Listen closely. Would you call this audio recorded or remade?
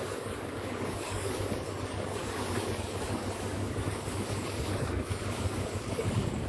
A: remade